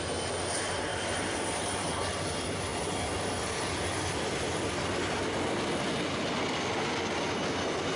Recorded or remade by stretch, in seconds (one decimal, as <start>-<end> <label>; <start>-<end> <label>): 0.0-8.0 recorded